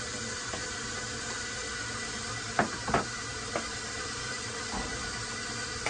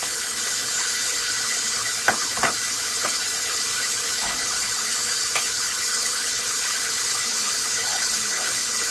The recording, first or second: first